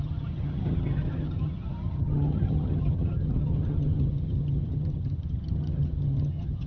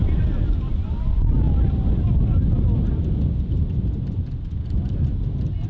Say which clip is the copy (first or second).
first